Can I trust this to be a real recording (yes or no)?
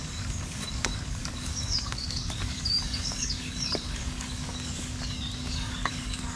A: no